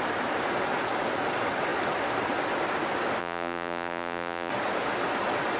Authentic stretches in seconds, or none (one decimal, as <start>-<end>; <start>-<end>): 0.0-3.2; 4.5-5.6